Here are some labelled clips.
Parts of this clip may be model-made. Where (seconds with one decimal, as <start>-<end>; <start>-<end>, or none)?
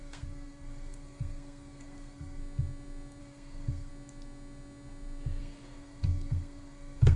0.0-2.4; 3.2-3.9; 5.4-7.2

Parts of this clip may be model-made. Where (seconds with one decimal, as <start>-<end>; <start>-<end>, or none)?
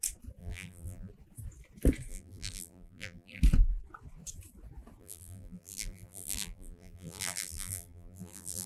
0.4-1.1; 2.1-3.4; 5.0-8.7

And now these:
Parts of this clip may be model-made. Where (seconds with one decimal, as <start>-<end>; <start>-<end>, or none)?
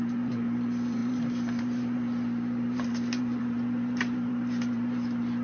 0.0-5.4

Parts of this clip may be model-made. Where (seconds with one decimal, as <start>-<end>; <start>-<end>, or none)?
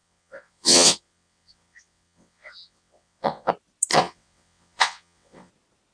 0.0-3.5; 3.9-5.5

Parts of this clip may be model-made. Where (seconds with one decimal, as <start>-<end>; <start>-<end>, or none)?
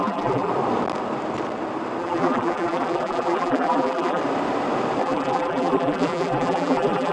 0.0-0.5; 2.0-4.2; 5.0-7.1